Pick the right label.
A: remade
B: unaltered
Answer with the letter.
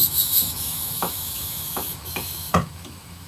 A